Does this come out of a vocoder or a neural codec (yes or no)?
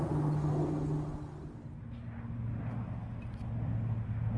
no